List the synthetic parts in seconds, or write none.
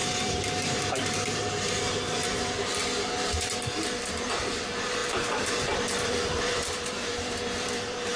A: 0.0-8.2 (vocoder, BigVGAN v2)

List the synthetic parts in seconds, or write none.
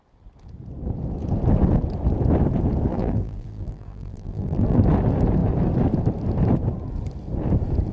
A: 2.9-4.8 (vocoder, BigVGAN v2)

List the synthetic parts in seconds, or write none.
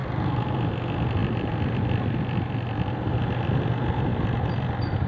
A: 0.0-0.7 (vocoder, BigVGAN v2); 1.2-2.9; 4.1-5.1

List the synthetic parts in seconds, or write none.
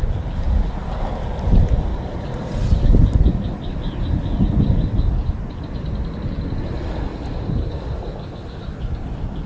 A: 1.9-2.5 (vocoder, BigVGAN v2); 7.1-7.7